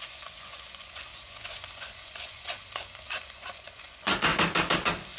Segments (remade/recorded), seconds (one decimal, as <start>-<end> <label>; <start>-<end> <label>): 0.0-4.3 remade; 4.3-5.2 recorded